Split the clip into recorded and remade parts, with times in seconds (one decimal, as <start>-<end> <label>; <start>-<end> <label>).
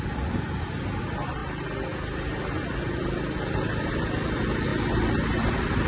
0.0-5.9 recorded